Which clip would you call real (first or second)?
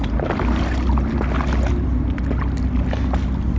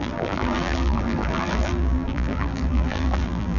first